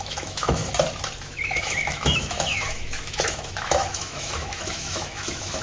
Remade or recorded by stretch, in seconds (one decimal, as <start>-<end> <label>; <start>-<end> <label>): 0.0-0.6 remade; 0.6-1.2 recorded; 1.2-5.6 remade